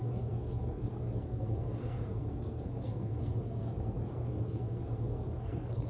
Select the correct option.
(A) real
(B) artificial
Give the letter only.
B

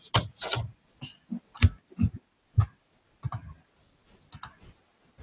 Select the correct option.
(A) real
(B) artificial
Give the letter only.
A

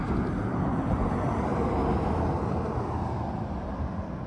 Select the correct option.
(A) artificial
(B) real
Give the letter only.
B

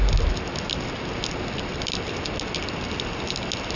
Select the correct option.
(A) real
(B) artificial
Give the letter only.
A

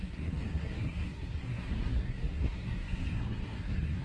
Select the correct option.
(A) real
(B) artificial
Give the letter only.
B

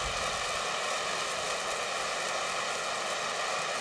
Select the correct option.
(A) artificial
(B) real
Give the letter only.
B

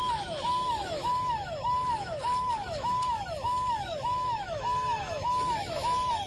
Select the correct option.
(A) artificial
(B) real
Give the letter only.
A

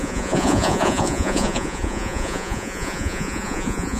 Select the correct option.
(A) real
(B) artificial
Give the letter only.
B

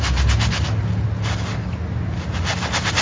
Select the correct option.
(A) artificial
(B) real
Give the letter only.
B